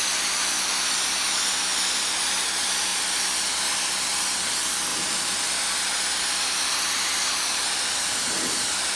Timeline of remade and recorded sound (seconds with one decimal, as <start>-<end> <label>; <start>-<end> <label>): 0.0-9.0 recorded